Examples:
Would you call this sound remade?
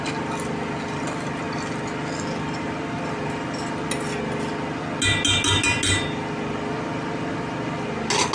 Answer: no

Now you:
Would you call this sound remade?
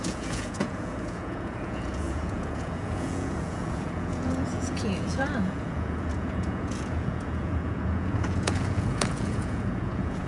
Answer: yes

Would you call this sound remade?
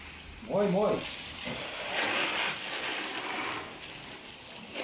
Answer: no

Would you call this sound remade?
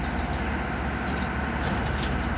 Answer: no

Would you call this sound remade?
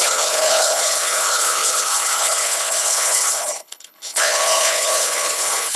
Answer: yes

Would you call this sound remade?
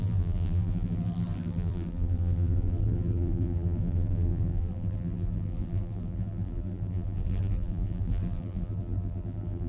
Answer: yes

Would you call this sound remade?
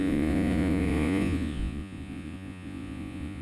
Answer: yes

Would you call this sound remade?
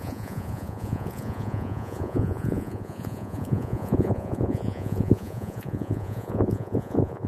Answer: yes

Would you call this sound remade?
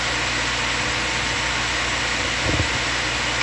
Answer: no